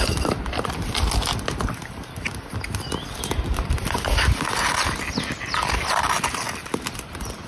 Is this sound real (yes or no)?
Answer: yes